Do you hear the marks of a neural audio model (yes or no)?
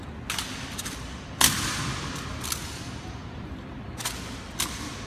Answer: no